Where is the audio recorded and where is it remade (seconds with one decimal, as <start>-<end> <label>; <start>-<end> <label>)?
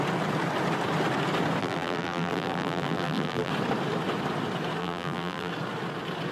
0.0-1.6 recorded; 1.6-3.5 remade; 3.5-4.8 recorded; 4.8-5.5 remade; 5.5-6.3 recorded